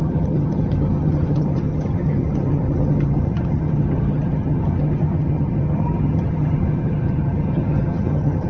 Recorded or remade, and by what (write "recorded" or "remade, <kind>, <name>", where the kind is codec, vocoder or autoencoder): remade, vocoder, HiFi-GAN